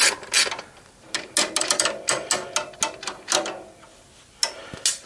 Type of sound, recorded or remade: recorded